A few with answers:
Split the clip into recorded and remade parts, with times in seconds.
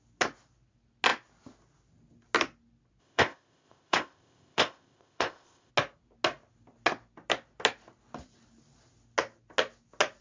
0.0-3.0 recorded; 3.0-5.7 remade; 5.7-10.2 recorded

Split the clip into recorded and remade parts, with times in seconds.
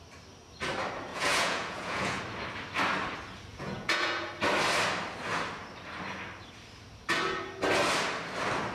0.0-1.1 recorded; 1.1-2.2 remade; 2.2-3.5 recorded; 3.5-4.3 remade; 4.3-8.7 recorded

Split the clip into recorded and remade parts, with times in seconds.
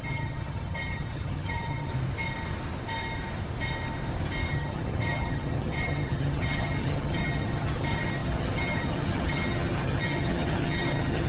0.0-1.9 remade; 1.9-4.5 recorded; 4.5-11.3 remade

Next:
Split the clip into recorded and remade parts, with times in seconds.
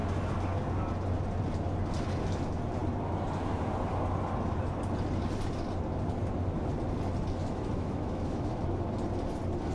0.0-7.4 recorded; 7.4-8.6 remade; 8.6-9.7 recorded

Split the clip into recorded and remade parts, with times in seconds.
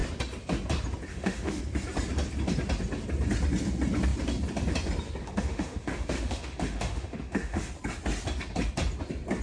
0.0-1.1 recorded; 1.1-1.6 remade; 1.6-5.2 recorded; 5.2-7.7 remade; 7.7-9.4 recorded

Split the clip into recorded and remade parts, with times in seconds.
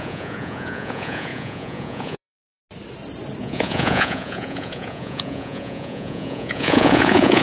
0.0-2.6 remade; 2.6-3.4 recorded; 3.4-7.4 remade